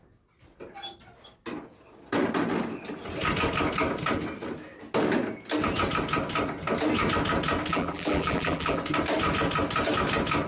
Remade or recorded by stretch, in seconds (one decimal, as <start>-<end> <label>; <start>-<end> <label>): 0.0-7.7 recorded; 7.7-8.8 remade; 8.8-10.5 recorded